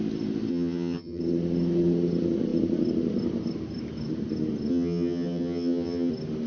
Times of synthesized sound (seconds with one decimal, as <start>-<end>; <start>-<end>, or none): 0.5-1.2; 4.7-6.1